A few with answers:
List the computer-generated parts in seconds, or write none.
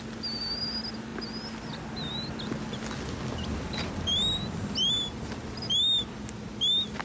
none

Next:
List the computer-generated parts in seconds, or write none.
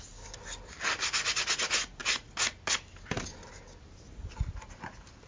none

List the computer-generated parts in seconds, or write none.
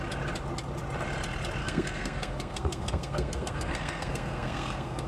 1.6-5.1 (codec, SNAC)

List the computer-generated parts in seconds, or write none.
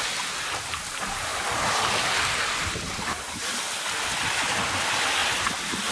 none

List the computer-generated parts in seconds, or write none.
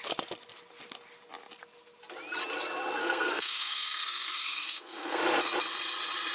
3.0-5.2 (codec, SNAC)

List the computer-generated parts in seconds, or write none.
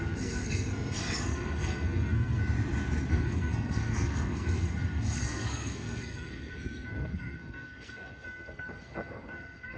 0.0-2.4 (codec, SNAC); 3.1-9.8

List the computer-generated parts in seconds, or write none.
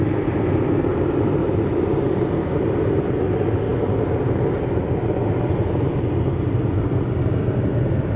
none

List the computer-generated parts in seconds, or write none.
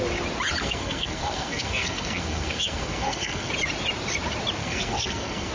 0.6-3.5 (codec, SNAC); 4.6-5.5